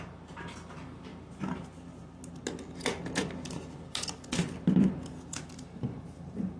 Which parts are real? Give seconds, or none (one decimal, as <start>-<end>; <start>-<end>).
1.1-5.1